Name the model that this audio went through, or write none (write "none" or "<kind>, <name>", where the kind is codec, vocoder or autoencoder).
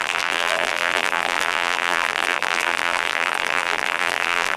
vocoder, BigVGAN v2